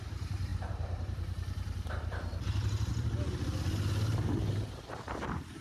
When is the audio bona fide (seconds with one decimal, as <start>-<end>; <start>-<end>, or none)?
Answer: 2.9-4.5